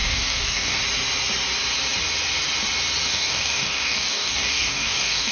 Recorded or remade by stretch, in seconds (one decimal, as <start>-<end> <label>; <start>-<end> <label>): 0.0-0.8 remade; 0.8-3.1 recorded; 3.1-5.3 remade

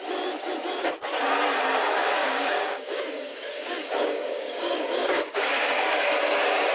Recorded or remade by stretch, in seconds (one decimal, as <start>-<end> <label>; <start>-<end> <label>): 0.0-2.0 recorded; 2.0-6.0 remade; 6.0-6.7 recorded

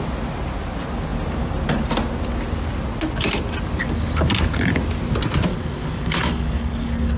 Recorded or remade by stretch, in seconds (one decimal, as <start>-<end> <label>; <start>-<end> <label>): 0.0-3.8 recorded; 3.8-4.3 remade; 4.3-5.5 recorded; 5.5-7.2 remade

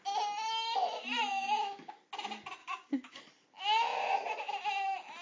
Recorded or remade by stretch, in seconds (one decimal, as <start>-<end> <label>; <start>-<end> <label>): 0.0-1.3 recorded; 1.3-1.9 remade; 1.9-2.6 recorded; 2.6-3.2 remade; 3.2-5.2 recorded

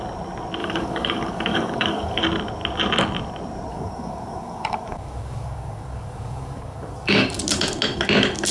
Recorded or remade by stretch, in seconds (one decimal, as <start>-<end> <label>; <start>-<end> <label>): 0.0-0.6 recorded; 0.6-2.2 remade; 2.2-3.7 recorded; 3.7-7.4 remade; 7.4-8.5 recorded